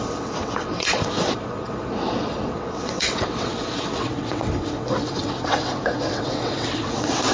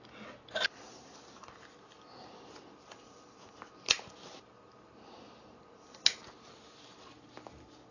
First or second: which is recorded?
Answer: second